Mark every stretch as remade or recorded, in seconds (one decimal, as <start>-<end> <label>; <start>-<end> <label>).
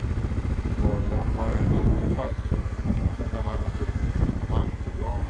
0.0-0.9 recorded; 0.9-4.1 remade; 4.1-4.6 recorded; 4.6-5.3 remade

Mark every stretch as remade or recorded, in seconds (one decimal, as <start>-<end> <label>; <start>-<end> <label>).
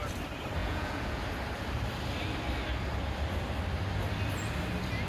0.0-0.6 recorded; 0.6-1.2 remade; 1.2-5.1 recorded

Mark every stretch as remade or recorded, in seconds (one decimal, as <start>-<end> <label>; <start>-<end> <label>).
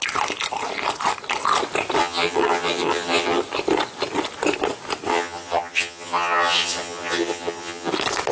0.0-2.0 recorded; 2.0-3.4 remade; 3.4-5.1 recorded; 5.1-7.9 remade; 7.9-8.3 recorded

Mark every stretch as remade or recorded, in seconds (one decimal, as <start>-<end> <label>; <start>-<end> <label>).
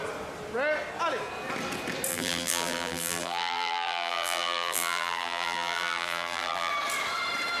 0.0-2.1 recorded; 2.1-6.7 remade; 6.7-7.6 recorded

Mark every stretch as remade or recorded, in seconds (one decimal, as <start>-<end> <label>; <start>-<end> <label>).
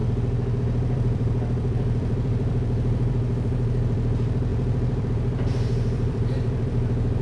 0.0-0.6 recorded; 0.6-7.2 remade